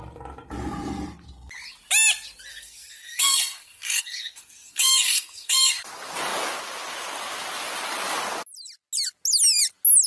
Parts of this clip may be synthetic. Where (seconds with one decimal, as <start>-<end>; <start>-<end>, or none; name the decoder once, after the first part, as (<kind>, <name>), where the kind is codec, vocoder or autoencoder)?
2.5-5.7 (codec, SNAC)